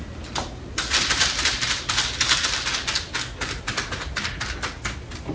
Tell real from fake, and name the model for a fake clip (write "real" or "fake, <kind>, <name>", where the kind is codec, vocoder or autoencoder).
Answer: real